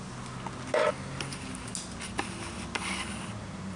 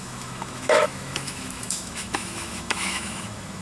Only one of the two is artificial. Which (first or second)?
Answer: second